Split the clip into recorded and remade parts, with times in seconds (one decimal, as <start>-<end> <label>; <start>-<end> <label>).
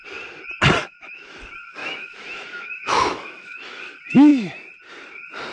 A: 0.0-0.8 recorded; 0.8-1.4 remade; 1.4-1.8 recorded; 1.8-3.8 remade; 3.8-5.5 recorded